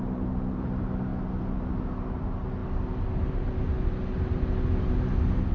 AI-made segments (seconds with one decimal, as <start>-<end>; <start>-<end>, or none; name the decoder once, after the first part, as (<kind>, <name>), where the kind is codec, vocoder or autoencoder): none